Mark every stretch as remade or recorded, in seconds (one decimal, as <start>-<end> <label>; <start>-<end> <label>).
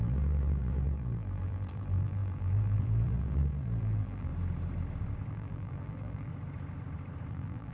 0.0-4.3 remade; 4.3-5.3 recorded; 5.3-6.3 remade; 6.3-7.3 recorded; 7.3-7.7 remade